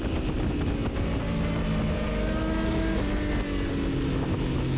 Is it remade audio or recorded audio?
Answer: recorded